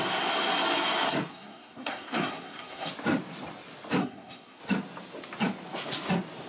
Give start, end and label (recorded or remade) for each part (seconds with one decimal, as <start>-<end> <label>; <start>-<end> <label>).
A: 0.0-1.3 recorded; 1.3-2.9 remade; 2.9-4.0 recorded; 4.0-4.6 remade; 4.6-6.5 recorded